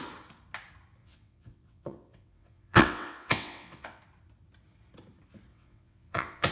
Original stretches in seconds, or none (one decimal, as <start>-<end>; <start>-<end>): 0.0-1.0; 4.0-5.5